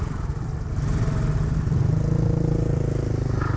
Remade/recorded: recorded